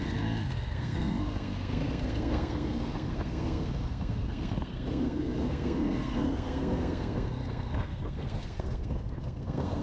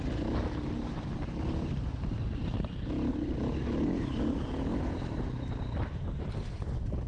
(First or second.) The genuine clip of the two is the second